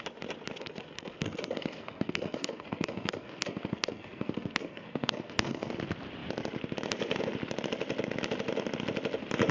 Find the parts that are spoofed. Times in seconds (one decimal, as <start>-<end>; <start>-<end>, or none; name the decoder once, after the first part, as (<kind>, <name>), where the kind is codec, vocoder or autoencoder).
0.6-5.7 (codec, SNAC)